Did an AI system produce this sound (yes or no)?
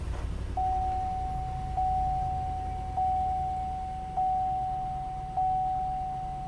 no